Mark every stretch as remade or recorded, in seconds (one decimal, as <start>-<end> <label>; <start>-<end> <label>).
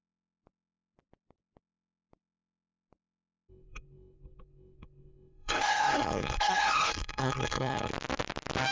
0.0-3.5 recorded; 3.5-7.9 remade; 7.9-8.7 recorded